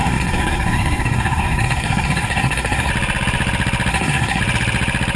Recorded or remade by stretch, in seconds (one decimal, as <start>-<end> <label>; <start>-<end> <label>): 0.0-2.9 remade; 2.9-3.9 recorded; 3.9-4.4 remade; 4.4-5.2 recorded